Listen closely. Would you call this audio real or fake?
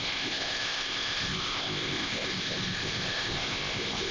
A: fake